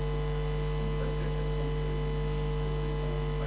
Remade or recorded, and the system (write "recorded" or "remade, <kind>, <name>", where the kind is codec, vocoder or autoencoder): recorded